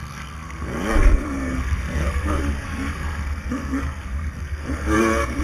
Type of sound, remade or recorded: remade